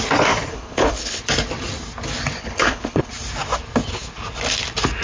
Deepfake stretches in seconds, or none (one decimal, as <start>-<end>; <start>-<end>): 0.5-1.2; 2.4-3.1